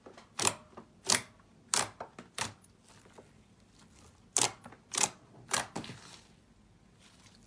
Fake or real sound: real